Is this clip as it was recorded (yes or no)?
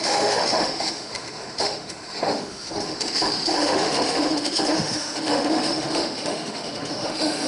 no